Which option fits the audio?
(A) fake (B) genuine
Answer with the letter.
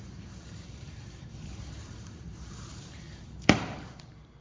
A